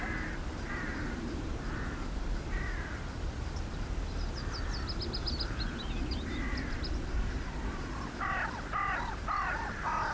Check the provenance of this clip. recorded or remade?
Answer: recorded